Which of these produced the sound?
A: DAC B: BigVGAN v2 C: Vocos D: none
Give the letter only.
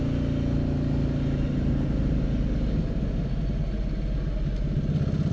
D